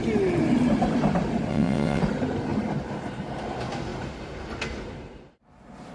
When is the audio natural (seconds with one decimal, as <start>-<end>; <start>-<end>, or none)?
0.0-1.5; 2.0-5.9